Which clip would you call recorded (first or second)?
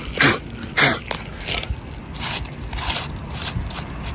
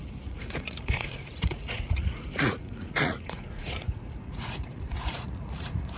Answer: first